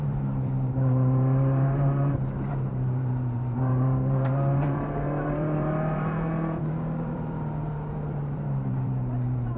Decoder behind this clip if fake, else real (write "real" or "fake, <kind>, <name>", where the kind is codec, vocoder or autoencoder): fake, vocoder, BigVGAN v2